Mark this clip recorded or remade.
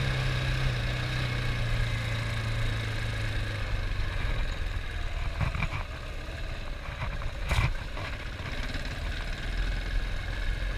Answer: recorded